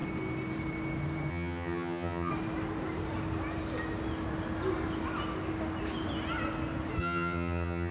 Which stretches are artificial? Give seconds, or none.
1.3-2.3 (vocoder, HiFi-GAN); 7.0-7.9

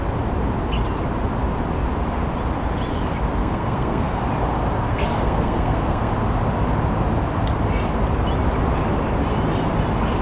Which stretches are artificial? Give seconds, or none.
3.4-4.2 (codec, SNAC); 4.8-6.1